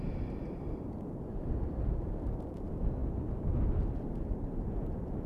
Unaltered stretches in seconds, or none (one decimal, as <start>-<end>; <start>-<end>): 0.0-5.3